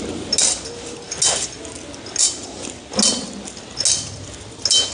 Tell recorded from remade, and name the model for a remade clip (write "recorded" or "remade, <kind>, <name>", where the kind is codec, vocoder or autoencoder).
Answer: recorded